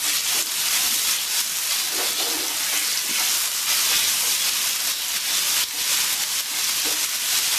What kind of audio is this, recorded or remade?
recorded